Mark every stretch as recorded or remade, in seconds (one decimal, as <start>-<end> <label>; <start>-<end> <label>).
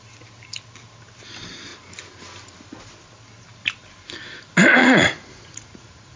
0.0-4.8 recorded; 4.8-6.2 remade